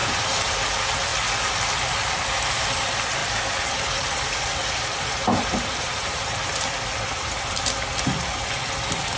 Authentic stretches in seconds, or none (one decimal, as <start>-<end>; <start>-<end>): 0.5-3.2; 7.6-9.2